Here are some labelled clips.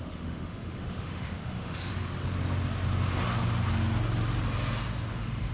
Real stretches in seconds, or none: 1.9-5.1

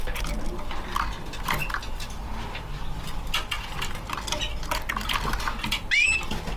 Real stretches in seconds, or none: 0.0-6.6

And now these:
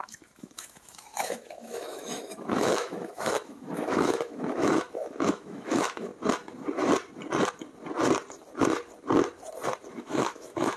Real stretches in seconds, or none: 6.1-9.9

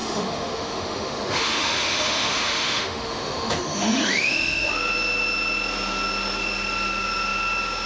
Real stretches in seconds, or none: 4.7-7.9

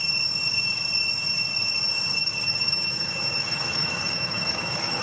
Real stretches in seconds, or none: 0.0-2.2